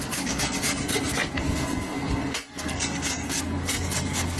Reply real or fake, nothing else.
fake